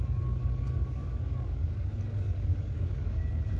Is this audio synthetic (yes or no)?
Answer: yes